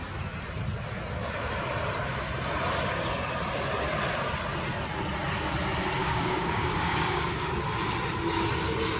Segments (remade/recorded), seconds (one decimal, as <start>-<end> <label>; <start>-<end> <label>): 0.0-6.0 recorded; 6.0-7.5 remade; 7.5-9.0 recorded